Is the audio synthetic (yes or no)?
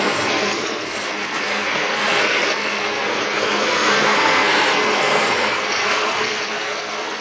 yes